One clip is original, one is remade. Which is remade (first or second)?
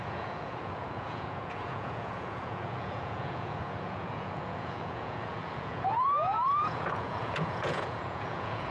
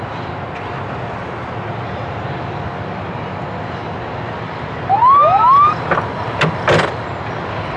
first